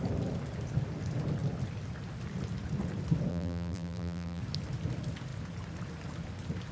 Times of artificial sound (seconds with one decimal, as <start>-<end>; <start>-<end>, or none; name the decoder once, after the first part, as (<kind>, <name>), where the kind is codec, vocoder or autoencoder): 3.3-4.4 (vocoder, BigVGAN v2)